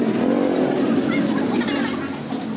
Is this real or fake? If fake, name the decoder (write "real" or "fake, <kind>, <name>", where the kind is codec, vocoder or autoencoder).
real